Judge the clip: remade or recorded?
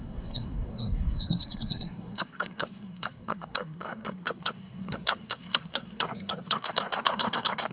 remade